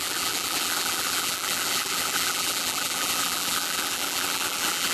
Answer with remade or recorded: remade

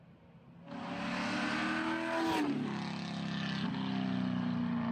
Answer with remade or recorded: recorded